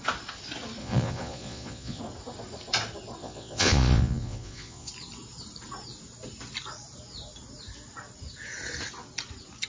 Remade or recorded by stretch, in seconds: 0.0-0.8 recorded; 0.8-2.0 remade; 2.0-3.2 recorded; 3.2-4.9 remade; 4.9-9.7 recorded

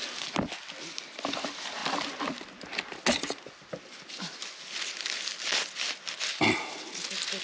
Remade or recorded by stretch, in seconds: 0.0-7.4 recorded

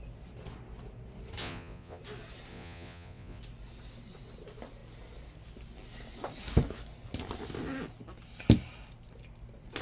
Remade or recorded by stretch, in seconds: 0.0-1.4 recorded; 1.4-2.0 remade; 2.0-2.5 recorded; 2.5-3.4 remade; 3.4-9.8 recorded

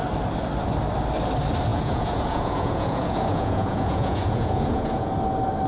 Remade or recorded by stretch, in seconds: 0.0-1.7 recorded; 1.7-5.1 remade; 5.1-5.7 recorded

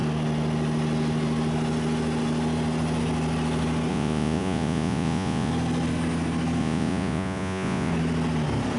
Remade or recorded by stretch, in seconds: 0.0-3.9 recorded; 3.9-5.5 remade; 5.5-6.6 recorded; 6.6-7.9 remade; 7.9-8.8 recorded

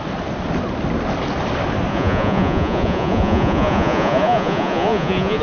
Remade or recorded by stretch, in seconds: 0.0-1.9 recorded; 1.9-5.4 remade

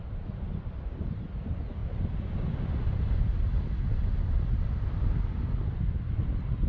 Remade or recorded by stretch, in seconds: 0.0-6.7 recorded